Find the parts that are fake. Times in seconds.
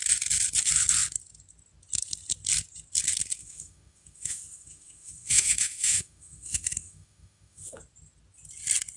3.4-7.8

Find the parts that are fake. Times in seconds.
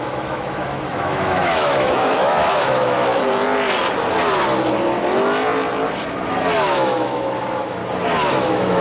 0.0-3.1; 6.6-7.8; 8.3-8.8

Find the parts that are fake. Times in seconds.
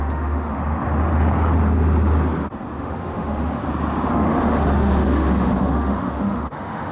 0.0-0.6; 2.8-3.6; 4.1-6.9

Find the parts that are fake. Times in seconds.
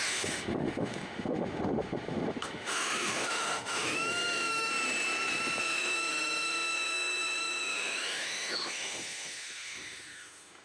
0.0-4.7; 5.6-10.6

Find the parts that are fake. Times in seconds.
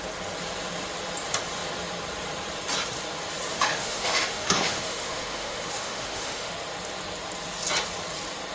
3.5-6.5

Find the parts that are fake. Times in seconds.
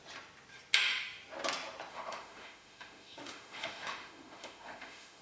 1.9-5.2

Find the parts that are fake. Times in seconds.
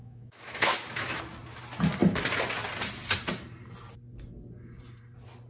0.0-1.2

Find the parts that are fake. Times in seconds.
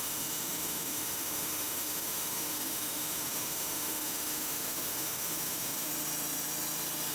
0.0-5.9